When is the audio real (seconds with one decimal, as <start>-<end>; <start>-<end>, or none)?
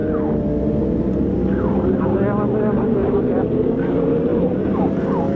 0.0-3.0; 3.8-5.4